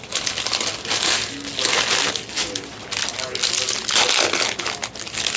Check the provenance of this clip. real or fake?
real